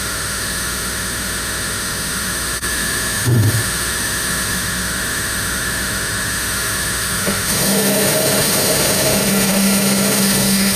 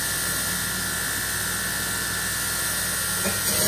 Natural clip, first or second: second